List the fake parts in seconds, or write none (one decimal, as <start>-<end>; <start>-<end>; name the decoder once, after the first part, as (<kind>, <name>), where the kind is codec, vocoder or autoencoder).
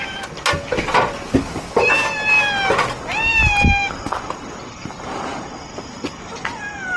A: none